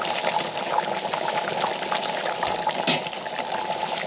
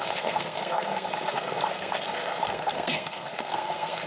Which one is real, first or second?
first